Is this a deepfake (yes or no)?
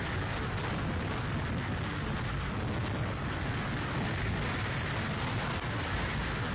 no